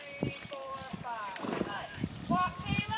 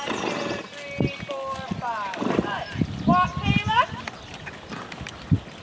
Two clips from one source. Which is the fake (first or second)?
first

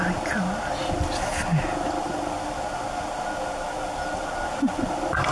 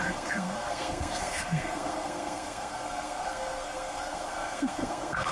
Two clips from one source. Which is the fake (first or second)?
second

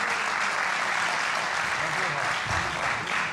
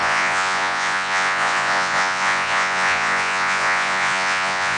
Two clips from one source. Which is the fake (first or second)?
second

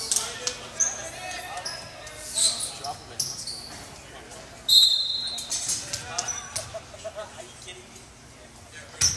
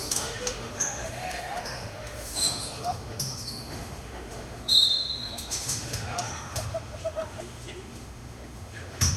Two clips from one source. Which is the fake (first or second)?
second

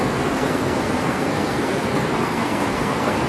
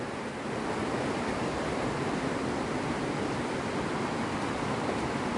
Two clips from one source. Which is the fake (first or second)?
first